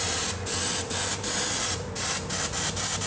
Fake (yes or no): no